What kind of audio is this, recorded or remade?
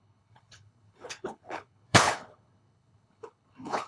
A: remade